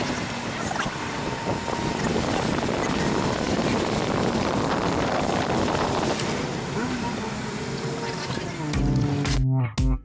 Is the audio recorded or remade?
recorded